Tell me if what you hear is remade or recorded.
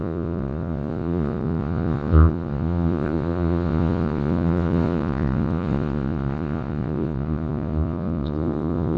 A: remade